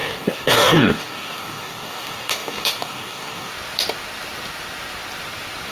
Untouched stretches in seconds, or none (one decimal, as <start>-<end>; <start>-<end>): 3.5-5.7